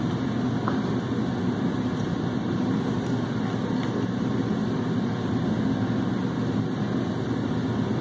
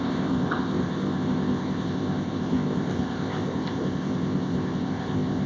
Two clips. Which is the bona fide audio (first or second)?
first